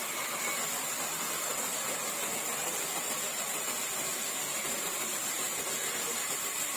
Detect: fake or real real